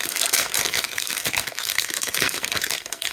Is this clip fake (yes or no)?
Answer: yes